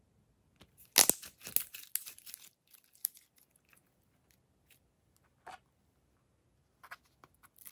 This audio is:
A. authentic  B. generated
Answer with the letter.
A